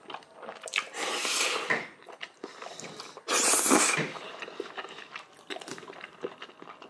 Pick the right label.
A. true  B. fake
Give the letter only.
A